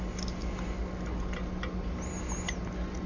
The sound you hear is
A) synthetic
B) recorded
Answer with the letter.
B